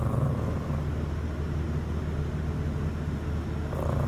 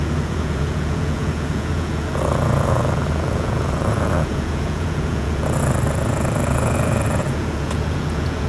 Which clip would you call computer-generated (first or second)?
second